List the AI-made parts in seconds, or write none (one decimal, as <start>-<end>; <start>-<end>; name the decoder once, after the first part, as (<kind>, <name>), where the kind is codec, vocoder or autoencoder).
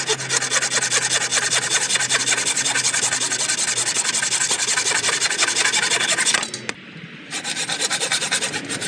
none